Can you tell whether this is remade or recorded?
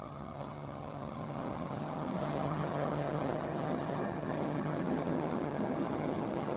remade